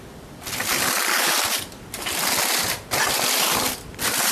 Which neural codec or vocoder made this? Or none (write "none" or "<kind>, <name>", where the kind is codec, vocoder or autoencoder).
none